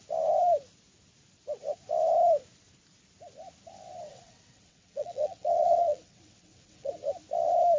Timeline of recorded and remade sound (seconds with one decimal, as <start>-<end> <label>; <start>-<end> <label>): 0.0-4.1 recorded; 4.1-6.9 remade; 6.9-7.8 recorded